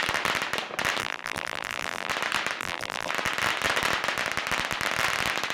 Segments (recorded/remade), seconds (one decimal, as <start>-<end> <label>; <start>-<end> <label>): 0.0-1.0 recorded; 1.0-2.1 remade; 2.1-2.6 recorded; 2.6-3.1 remade; 3.1-5.5 recorded